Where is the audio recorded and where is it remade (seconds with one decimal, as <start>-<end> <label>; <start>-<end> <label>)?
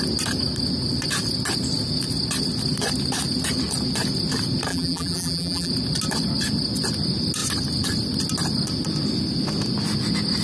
0.0-4.7 recorded; 4.7-5.7 remade; 5.7-10.4 recorded